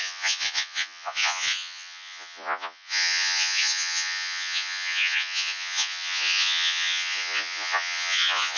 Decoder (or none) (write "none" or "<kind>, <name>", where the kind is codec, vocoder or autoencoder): vocoder, Vocos